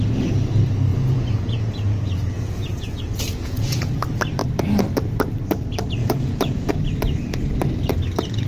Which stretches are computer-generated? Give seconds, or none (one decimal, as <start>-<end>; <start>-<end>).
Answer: 0.9-3.9; 6.0-6.7